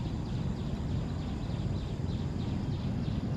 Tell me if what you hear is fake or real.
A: real